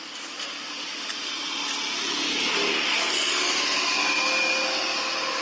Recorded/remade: recorded